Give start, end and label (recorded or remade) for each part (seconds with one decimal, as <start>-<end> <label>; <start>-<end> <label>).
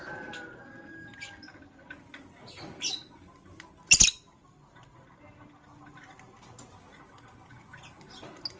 0.0-8.6 recorded